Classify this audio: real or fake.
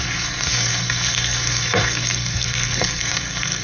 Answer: fake